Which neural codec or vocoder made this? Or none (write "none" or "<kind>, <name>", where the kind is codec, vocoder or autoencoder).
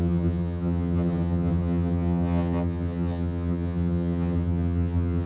vocoder, HiFi-GAN